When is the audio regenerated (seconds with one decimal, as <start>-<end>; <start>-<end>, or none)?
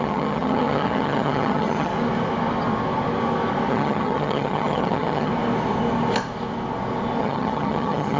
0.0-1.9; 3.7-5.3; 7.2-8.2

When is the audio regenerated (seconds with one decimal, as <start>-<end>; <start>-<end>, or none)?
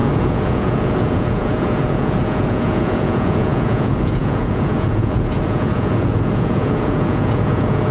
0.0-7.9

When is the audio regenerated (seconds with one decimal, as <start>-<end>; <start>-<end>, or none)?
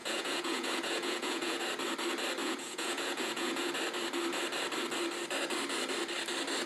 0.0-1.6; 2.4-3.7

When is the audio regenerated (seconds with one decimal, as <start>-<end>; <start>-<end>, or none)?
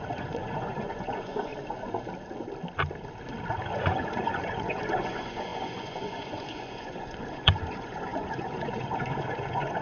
0.0-1.5; 3.7-9.8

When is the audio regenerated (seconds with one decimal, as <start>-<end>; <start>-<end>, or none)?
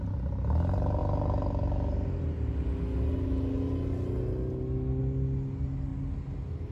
none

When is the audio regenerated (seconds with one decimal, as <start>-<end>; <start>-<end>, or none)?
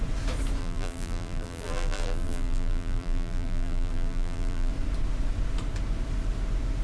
0.6-4.7